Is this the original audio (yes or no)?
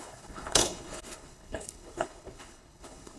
no